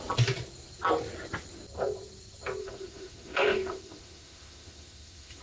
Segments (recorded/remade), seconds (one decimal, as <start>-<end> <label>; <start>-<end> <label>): 0.0-2.6 recorded; 2.6-5.4 remade